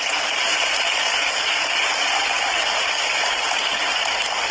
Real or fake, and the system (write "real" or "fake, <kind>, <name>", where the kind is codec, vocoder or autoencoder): real